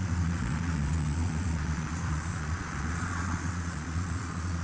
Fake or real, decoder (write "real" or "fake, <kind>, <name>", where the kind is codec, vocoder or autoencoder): fake, vocoder, Vocos